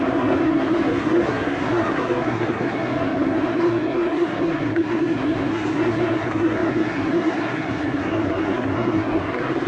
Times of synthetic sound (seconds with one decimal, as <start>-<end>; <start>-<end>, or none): 0.0-9.7